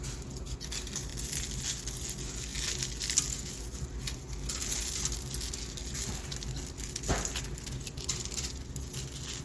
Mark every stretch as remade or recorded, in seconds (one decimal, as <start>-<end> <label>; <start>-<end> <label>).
0.0-9.4 recorded